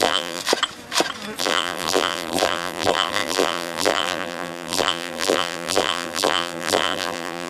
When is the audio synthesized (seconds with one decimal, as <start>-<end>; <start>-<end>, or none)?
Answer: 0.0-0.4; 1.4-7.5